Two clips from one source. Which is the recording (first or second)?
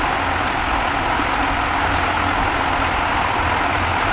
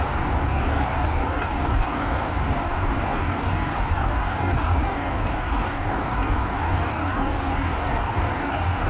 first